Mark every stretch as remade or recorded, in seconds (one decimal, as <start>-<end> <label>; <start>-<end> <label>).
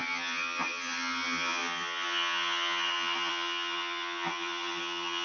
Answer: 0.0-5.2 remade